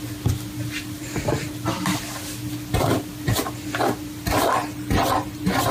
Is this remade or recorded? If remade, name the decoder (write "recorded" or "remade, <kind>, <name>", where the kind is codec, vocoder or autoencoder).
recorded